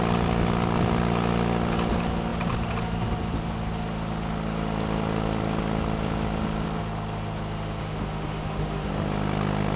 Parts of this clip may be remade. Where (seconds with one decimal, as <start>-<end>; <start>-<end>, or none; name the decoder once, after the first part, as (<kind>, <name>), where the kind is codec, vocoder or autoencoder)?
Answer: 7.8-8.9 (autoencoder, DAC-VAE)